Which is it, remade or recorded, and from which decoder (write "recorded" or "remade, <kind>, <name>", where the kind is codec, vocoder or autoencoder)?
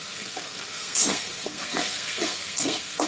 remade, codec, SNAC